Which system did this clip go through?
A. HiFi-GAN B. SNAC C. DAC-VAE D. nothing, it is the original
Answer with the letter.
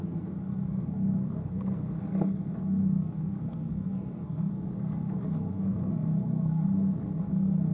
B